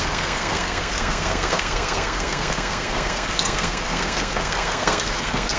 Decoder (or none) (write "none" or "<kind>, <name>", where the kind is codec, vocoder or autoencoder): codec, SNAC